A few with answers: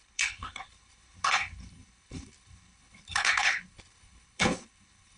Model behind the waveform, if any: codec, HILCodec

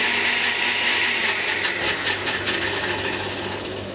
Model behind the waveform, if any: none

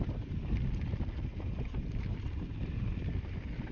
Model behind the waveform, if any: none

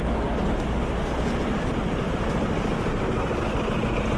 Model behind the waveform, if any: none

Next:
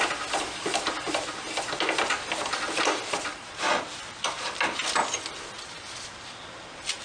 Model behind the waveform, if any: none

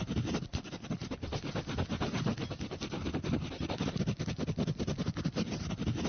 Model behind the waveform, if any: none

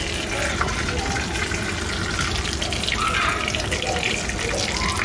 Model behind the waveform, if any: none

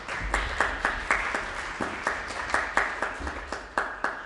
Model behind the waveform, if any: none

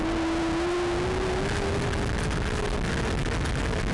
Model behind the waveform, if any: none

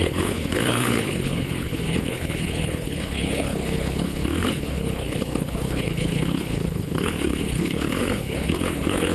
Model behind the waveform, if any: codec, HILCodec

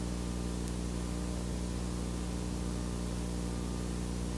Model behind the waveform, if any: none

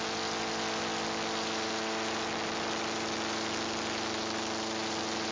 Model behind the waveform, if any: none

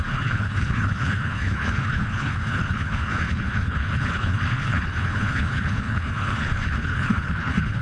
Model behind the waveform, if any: codec, HILCodec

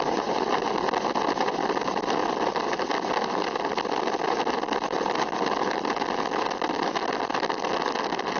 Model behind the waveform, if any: none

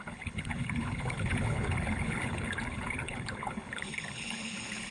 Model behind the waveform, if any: codec, HILCodec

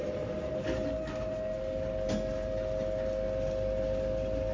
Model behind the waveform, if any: none